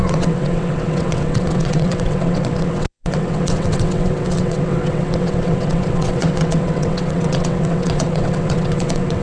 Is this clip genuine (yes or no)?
no